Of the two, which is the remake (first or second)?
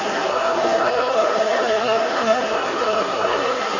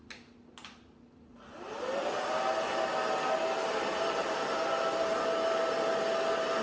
first